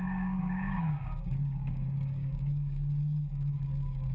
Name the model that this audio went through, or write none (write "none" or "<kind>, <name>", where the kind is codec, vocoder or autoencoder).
codec, DAC